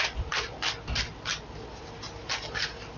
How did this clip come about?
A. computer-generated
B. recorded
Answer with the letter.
B